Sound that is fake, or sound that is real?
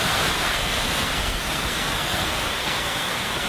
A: fake